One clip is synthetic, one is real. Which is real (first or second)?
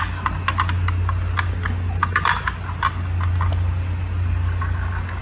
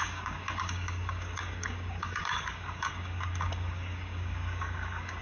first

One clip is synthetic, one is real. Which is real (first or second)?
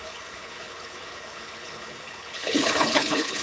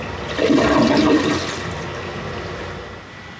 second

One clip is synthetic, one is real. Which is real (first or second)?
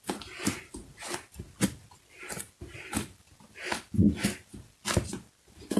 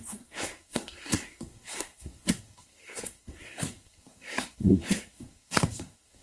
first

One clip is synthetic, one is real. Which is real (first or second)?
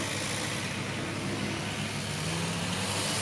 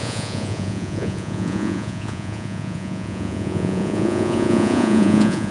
first